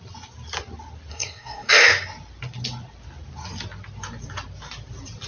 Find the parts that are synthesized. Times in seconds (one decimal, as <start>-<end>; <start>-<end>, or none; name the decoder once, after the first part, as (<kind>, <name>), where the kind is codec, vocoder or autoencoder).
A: 1.1-1.7 (codec, SNAC)